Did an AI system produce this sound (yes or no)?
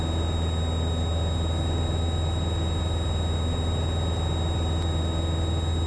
no